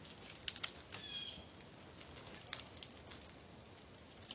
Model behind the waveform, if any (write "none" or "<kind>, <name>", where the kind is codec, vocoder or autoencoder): none